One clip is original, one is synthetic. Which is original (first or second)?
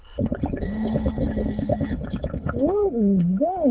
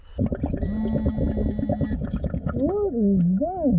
second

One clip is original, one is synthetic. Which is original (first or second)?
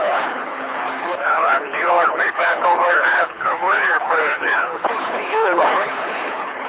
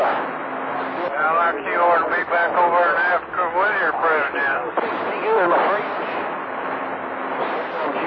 second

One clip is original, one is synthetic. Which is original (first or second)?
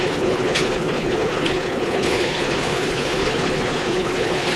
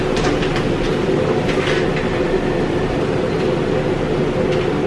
second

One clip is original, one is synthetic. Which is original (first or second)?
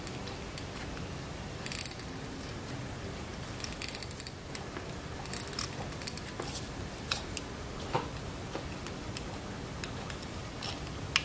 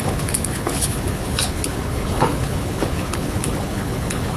first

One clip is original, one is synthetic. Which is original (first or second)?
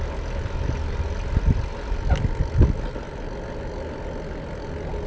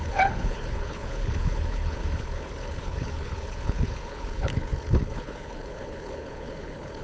first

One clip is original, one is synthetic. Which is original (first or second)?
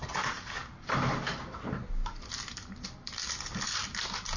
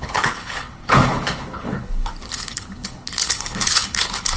first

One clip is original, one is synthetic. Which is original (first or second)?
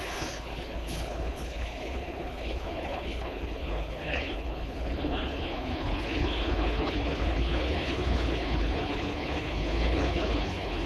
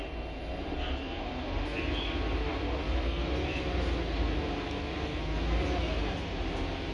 second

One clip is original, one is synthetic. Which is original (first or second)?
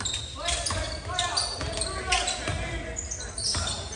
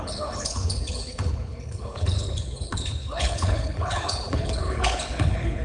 first